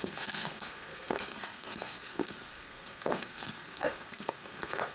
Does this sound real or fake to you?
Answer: fake